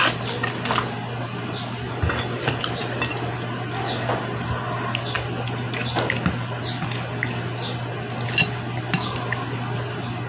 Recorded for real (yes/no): yes